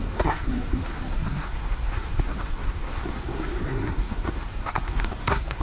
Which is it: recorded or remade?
remade